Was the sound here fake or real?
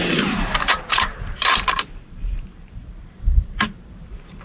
fake